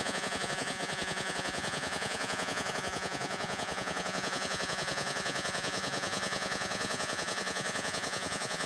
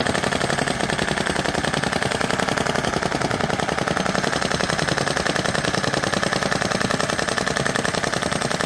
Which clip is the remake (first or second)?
first